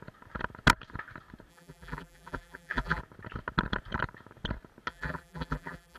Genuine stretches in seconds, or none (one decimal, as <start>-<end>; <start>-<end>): 0.0-1.5; 3.0-4.9